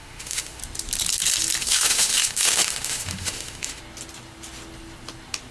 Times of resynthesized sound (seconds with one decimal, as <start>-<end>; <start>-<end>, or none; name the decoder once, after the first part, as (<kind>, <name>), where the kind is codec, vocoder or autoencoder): 0.0-0.6 (autoencoder, DAC-VAE); 1.6-3.8